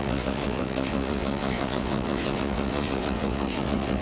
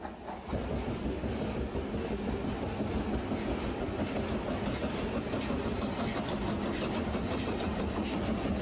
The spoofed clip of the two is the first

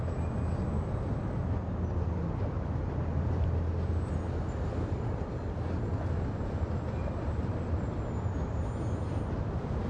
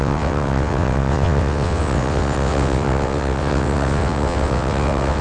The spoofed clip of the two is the second